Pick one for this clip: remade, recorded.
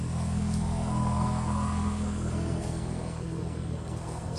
remade